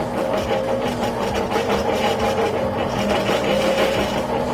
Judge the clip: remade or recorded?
remade